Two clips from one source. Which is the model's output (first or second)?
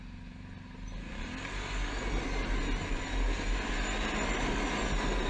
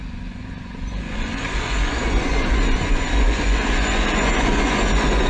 second